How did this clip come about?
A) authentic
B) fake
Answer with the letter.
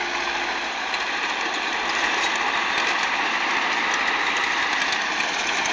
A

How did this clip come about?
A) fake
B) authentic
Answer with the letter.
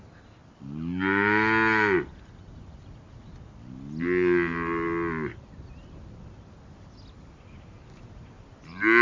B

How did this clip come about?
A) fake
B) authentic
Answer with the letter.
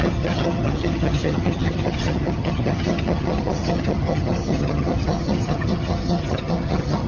A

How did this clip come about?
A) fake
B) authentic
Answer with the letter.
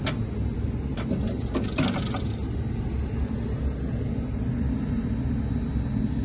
B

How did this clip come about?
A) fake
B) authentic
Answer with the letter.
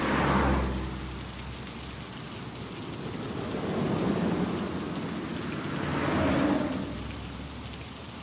B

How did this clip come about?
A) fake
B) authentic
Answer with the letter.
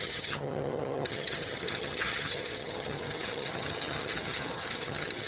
A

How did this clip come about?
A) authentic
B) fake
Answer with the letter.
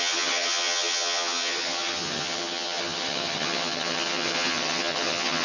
B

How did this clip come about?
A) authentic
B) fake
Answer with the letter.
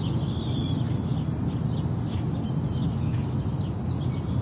A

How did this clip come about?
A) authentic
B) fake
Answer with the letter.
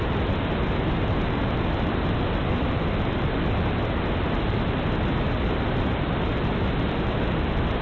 A